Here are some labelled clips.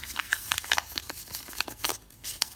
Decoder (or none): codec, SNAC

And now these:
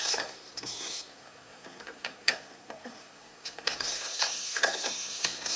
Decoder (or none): codec, SNAC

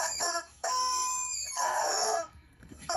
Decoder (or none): codec, SNAC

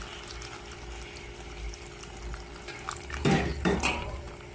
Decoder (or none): none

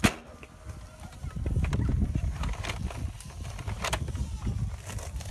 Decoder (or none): none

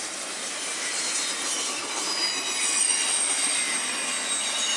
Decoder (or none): none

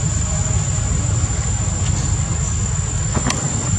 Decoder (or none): none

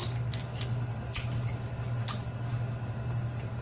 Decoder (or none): none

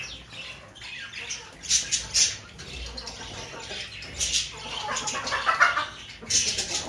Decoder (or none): none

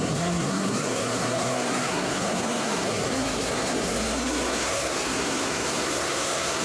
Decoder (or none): codec, SNAC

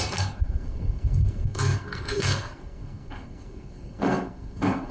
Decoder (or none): codec, SNAC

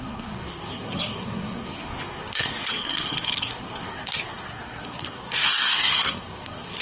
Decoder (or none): codec, SNAC